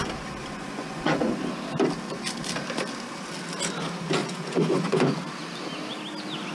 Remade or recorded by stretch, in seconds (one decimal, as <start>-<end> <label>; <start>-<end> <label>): 0.0-0.4 recorded; 0.4-1.3 remade; 1.3-4.2 recorded; 4.2-5.3 remade; 5.3-6.5 recorded